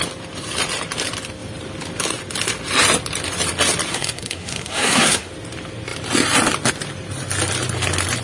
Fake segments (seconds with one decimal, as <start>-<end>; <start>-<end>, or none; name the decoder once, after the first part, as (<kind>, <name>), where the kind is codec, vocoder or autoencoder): 3.9-5.3 (codec, SNAC)